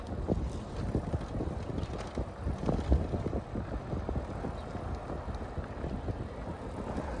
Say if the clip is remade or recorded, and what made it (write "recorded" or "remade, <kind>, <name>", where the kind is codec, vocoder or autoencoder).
recorded